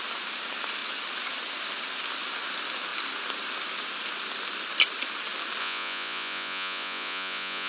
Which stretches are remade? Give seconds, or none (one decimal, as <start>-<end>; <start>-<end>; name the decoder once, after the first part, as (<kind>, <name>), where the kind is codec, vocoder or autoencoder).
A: 5.6-7.7 (vocoder, Vocos)